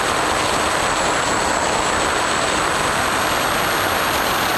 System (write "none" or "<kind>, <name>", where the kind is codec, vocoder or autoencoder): none